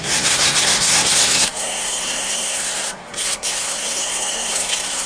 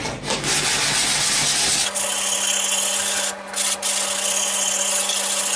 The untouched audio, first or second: second